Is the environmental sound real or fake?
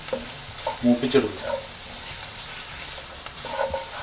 real